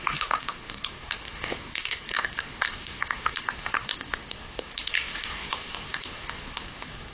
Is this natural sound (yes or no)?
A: no